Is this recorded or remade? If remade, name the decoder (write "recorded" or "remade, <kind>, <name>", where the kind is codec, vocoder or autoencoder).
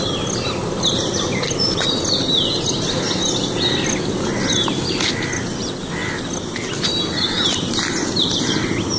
recorded